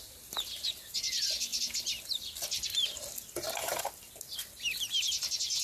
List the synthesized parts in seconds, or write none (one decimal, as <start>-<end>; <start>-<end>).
none